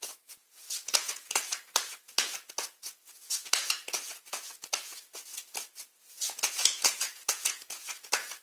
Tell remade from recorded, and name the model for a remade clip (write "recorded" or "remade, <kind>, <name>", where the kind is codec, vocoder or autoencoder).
remade, vocoder, Vocos